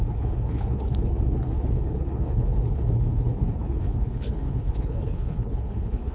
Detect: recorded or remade remade